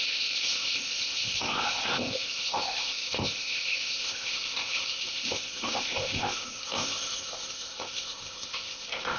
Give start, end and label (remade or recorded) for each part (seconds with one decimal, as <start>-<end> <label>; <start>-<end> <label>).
0.0-9.2 remade

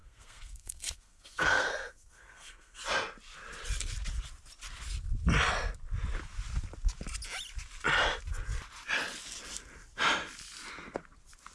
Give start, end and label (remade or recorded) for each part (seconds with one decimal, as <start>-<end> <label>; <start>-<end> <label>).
0.0-2.8 remade; 2.8-11.5 recorded